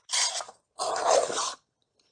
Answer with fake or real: real